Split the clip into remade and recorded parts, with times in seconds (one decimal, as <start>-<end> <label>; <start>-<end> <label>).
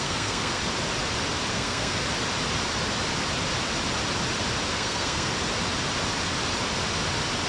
0.0-0.6 remade; 0.6-1.5 recorded; 1.5-2.0 remade; 2.0-4.7 recorded; 4.7-5.3 remade; 5.3-7.5 recorded